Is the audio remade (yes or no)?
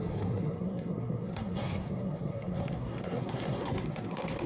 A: yes